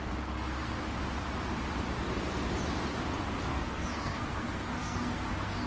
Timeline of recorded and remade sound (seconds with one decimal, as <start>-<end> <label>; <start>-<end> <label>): 0.0-0.8 remade; 0.8-3.4 recorded; 3.4-5.7 remade